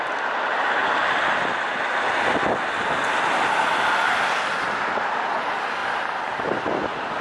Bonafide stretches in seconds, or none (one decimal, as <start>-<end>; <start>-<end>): 0.0-7.2